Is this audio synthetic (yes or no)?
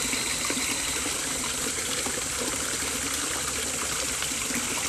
no